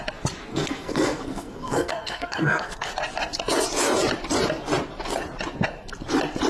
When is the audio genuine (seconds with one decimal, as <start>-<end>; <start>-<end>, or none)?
0.0-0.5; 2.9-6.5